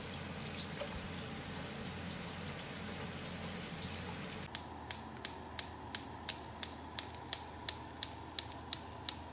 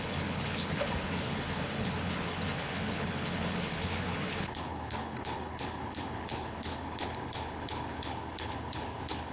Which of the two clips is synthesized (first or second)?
second